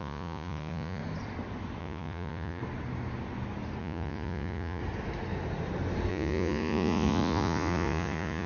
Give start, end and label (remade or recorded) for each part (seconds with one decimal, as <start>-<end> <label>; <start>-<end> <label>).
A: 0.0-1.0 remade; 1.0-1.8 recorded; 1.8-2.6 remade; 2.6-3.8 recorded; 3.8-4.8 remade; 4.8-6.1 recorded; 6.1-8.5 remade